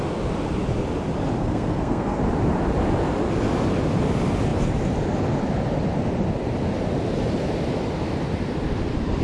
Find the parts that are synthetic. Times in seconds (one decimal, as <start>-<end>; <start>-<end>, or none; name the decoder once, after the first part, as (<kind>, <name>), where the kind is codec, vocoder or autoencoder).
1.4-2.2 (codec, SNAC)